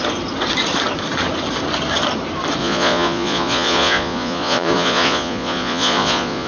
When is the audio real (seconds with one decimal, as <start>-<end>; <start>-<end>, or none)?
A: 0.0-2.6